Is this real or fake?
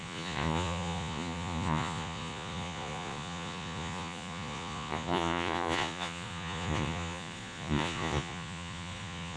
fake